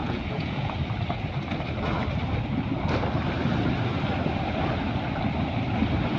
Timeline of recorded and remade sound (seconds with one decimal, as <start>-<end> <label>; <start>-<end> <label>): 0.0-0.7 remade; 0.7-6.2 recorded